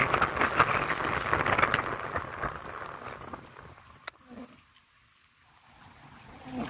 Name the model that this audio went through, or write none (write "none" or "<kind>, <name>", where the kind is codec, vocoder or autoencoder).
none